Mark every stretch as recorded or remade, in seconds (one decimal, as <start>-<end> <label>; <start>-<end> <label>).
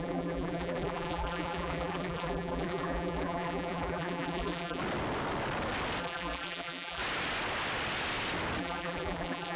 0.0-4.8 remade; 4.8-6.0 recorded; 6.0-7.0 remade; 7.0-8.6 recorded; 8.6-9.6 remade